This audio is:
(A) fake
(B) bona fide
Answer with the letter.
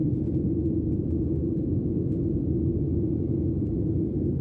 B